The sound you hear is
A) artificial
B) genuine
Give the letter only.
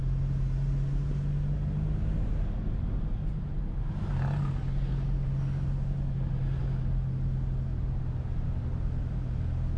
B